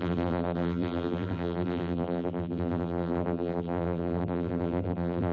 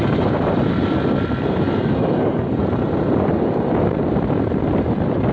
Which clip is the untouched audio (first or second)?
second